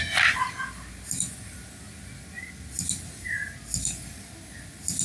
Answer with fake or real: real